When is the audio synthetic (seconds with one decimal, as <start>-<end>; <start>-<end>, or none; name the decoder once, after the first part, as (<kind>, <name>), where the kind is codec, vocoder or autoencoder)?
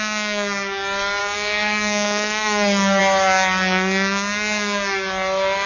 1.2-3.0 (codec, DAC)